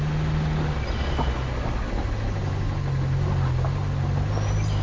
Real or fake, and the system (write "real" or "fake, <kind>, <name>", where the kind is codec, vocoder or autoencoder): real